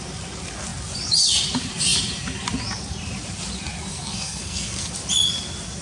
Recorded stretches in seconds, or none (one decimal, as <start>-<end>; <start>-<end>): 0.0-3.9; 4.9-5.8